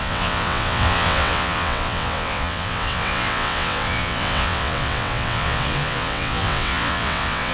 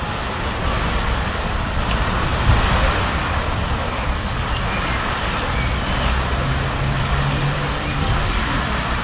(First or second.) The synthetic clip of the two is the first